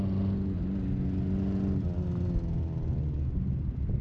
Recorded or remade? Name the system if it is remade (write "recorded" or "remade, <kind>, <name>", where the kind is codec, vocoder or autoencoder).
recorded